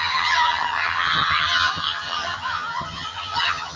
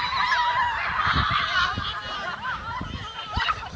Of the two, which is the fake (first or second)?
first